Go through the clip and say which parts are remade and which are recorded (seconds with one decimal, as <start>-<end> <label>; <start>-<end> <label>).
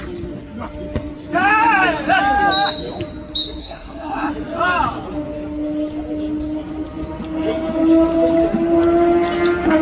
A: 0.0-3.6 recorded; 3.6-4.3 remade; 4.3-9.8 recorded